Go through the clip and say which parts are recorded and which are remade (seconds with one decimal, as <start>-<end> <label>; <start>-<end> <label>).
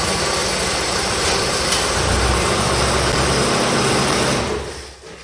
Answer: 0.0-5.2 recorded